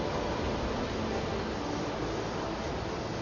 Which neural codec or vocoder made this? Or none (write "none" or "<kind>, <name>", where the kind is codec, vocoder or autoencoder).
none